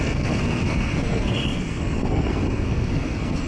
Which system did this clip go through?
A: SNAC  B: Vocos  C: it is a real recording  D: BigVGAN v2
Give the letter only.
A